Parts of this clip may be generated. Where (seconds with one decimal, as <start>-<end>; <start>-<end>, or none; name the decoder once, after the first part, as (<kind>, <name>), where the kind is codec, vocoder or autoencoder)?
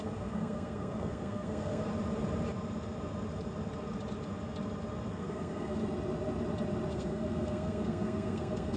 0.0-1.9 (codec, SNAC); 5.1-5.8; 6.9-8.8